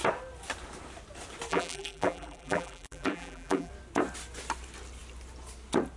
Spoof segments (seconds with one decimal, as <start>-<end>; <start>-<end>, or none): 1.5-3.7